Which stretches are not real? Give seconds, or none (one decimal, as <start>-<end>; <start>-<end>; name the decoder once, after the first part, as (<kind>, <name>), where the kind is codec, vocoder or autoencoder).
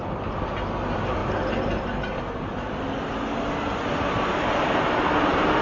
none